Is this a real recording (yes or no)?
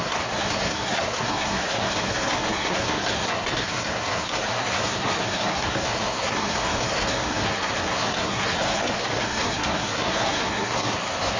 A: no